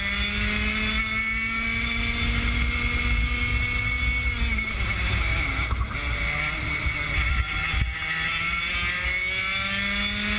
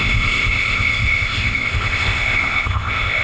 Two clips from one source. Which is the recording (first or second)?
first